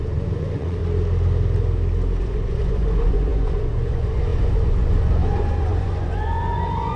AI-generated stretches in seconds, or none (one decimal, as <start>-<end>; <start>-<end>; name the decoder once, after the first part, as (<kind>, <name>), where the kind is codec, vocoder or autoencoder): 0.0-0.8 (vocoder, Vocos); 2.2-7.0